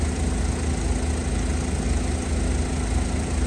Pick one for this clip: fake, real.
real